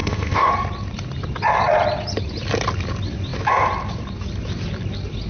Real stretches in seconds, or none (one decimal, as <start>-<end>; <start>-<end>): 0.5-5.3